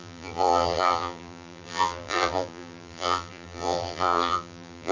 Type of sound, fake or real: fake